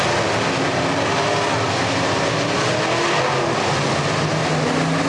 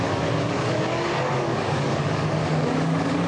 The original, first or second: first